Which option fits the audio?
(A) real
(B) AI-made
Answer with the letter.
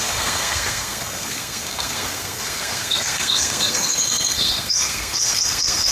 B